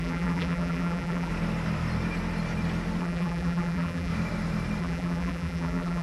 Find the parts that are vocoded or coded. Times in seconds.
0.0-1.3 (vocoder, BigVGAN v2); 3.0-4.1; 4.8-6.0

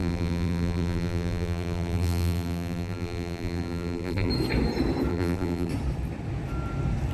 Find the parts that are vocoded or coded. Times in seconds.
0.0-4.3 (vocoder, BigVGAN v2); 5.1-5.7

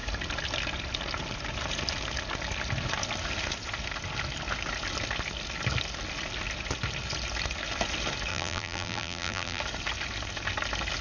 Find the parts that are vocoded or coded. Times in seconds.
8.3-9.6 (vocoder, BigVGAN v2)

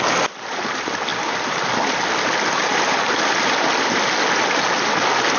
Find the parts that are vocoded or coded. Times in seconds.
none

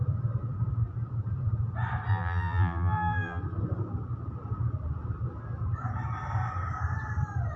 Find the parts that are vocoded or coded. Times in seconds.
2.1-3.4 (vocoder, BigVGAN v2)